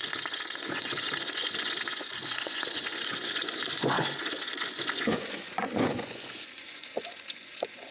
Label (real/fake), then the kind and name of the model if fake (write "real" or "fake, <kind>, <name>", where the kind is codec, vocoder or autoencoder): fake, vocoder, Vocos